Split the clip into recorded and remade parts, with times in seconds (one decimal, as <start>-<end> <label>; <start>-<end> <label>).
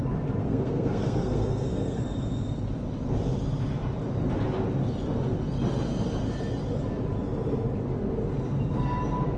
0.0-0.4 recorded; 0.4-2.0 remade; 2.0-9.4 recorded